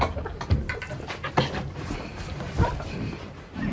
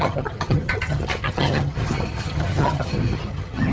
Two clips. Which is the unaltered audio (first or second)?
first